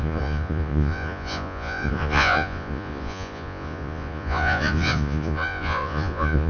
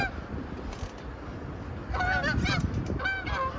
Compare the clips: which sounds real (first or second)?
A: second